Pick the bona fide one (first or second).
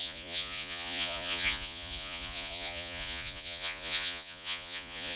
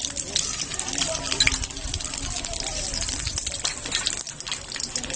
second